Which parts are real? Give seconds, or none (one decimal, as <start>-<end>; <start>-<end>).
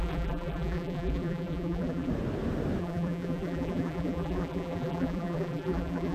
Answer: 2.1-2.8